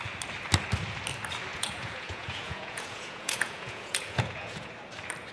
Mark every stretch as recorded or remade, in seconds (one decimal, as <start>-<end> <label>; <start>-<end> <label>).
0.0-1.5 recorded; 1.5-4.7 remade; 4.7-5.3 recorded